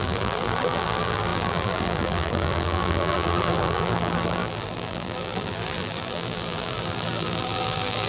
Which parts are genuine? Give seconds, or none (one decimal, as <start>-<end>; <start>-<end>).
none